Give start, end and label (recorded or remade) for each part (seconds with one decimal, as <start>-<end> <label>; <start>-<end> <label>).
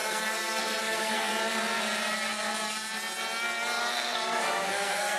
0.0-1.3 remade; 1.3-3.9 recorded; 3.9-5.2 remade